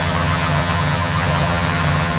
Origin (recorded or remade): remade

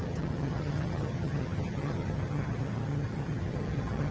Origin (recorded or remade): remade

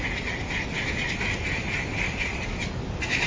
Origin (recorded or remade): recorded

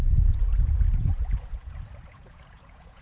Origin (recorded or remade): remade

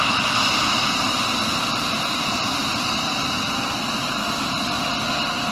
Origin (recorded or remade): recorded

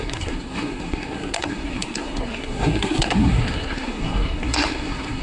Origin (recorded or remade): remade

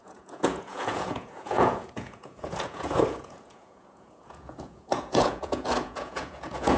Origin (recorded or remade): remade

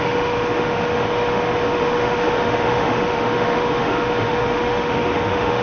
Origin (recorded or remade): remade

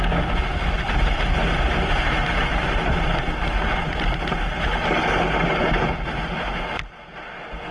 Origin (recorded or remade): recorded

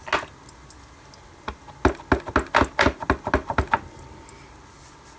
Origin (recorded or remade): recorded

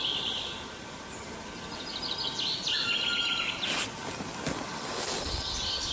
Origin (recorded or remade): recorded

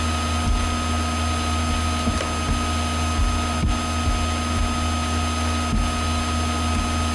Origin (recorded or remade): recorded